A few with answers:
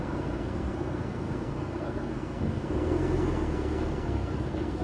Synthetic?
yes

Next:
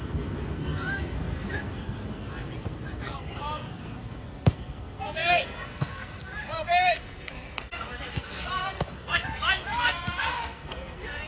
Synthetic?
yes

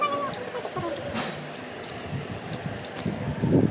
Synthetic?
no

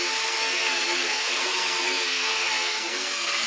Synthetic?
yes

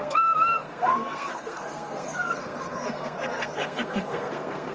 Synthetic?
yes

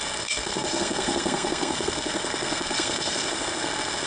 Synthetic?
yes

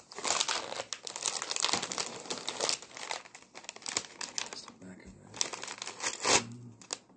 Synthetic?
no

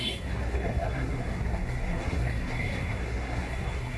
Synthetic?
yes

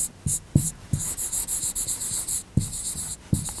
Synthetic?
no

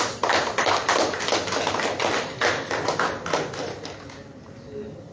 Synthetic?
no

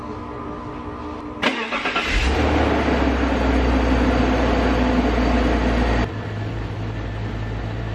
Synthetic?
no